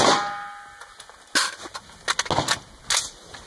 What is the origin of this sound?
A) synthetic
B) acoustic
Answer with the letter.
B